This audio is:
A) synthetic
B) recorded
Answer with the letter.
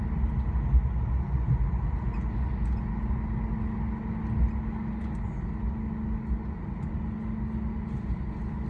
B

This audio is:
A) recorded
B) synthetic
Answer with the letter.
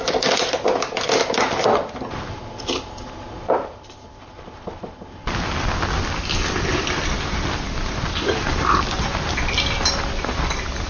A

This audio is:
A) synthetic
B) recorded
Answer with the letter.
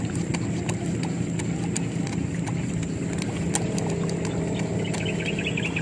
B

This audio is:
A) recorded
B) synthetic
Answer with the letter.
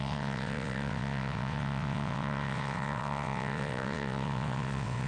B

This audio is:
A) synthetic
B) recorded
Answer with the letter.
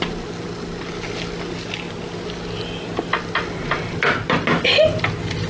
B